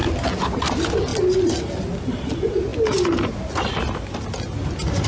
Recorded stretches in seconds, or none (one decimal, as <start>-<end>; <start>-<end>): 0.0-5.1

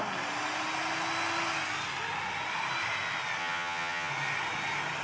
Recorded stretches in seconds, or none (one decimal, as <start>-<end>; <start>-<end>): 0.0-3.4; 4.1-5.0

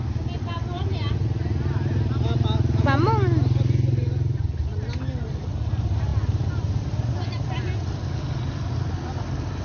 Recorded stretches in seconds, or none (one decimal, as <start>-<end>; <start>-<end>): 0.0-9.6

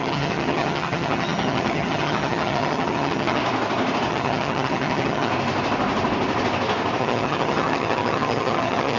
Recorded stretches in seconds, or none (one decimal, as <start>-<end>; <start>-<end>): 3.4-4.1; 5.3-7.0